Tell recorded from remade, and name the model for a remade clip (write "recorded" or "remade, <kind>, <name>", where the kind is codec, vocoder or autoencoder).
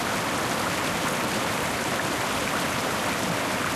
recorded